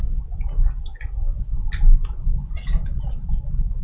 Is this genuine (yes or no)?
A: yes